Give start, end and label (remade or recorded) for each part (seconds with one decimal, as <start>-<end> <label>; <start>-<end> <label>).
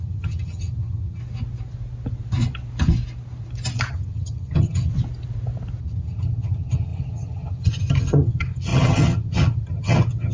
0.0-1.2 remade; 1.2-3.9 recorded; 3.9-4.9 remade; 4.9-5.8 recorded; 5.8-10.3 remade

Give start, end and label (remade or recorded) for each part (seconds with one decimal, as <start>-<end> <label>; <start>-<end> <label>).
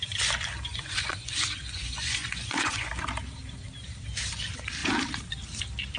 0.0-0.7 recorded; 0.7-2.9 remade; 2.9-6.0 recorded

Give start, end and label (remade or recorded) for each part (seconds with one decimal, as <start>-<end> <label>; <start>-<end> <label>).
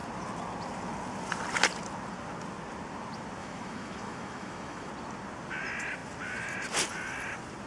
0.0-3.4 recorded; 3.4-4.9 remade; 4.9-7.7 recorded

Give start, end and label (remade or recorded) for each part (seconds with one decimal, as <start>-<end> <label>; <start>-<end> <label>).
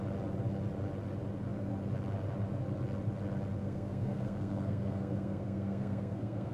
0.0-3.6 recorded; 3.6-6.5 remade